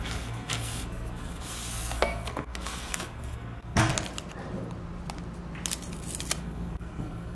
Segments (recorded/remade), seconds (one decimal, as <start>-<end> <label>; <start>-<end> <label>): 0.0-3.9 remade; 3.9-6.4 recorded; 6.4-7.3 remade